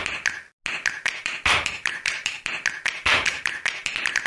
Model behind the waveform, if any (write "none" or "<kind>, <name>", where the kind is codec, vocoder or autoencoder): none